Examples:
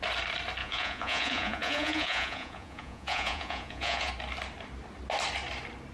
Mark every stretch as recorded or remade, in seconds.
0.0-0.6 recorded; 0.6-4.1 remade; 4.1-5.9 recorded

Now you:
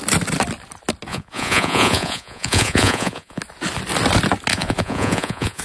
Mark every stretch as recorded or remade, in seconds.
0.0-1.1 recorded; 1.1-3.4 remade; 3.4-4.5 recorded; 4.5-5.6 remade

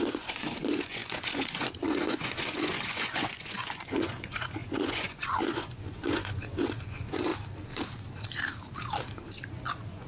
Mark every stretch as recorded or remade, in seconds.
0.0-7.3 remade; 7.3-9.5 recorded; 9.5-10.1 remade

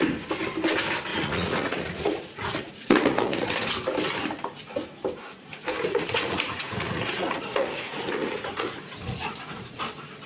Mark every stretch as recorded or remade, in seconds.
0.0-1.1 recorded; 1.1-3.5 remade; 3.5-5.9 recorded; 5.9-9.8 remade; 9.8-10.3 recorded

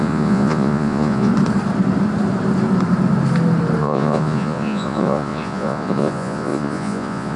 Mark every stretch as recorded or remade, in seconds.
0.0-1.3 remade; 1.3-3.8 recorded; 3.8-7.4 remade

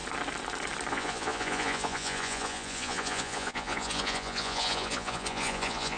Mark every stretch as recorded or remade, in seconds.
0.0-0.9 recorded; 0.9-6.0 remade

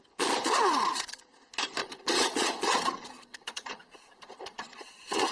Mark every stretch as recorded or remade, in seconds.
0.0-0.4 recorded; 0.4-1.2 remade; 1.2-1.8 recorded; 1.8-5.3 remade